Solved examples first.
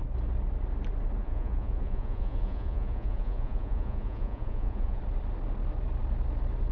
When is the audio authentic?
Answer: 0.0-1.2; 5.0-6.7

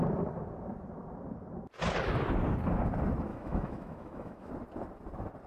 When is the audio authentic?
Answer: 0.0-3.3; 4.5-5.5

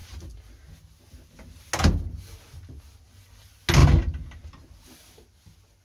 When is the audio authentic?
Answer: 0.0-5.8

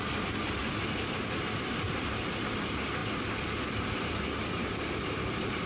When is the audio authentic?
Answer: 0.0-0.6; 2.2-5.7

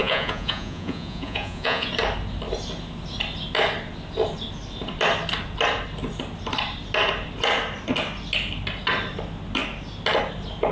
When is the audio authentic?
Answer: 1.9-10.7

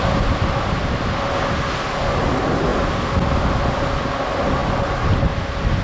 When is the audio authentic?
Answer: 0.0-5.8

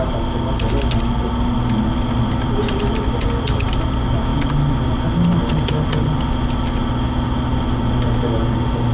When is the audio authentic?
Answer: 0.0-8.9